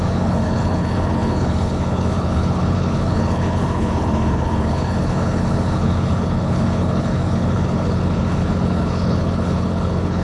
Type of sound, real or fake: fake